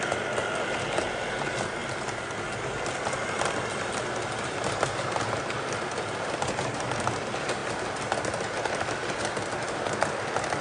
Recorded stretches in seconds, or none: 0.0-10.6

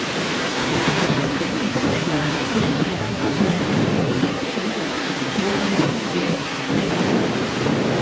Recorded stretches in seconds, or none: 0.0-0.4; 3.6-4.0; 6.9-8.0

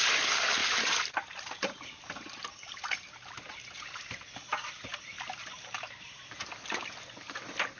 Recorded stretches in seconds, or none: 0.0-0.6; 3.3-4.9; 6.2-7.8

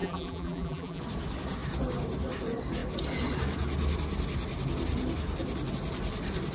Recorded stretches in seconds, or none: 1.0-6.5

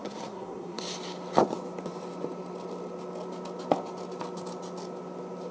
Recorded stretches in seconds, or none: 0.8-5.5

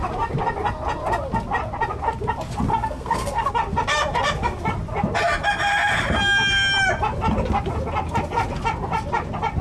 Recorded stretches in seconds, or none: 0.0-2.7; 3.5-9.6

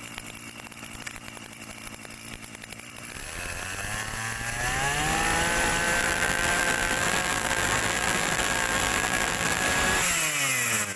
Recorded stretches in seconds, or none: 0.0-6.0; 9.7-11.0

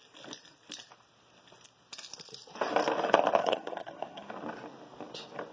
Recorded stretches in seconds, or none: 0.0-3.4; 4.3-5.5